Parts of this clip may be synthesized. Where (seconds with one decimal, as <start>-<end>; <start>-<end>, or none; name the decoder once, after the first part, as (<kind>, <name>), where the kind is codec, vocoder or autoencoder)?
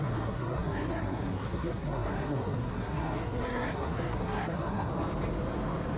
0.0-4.9 (codec, SNAC)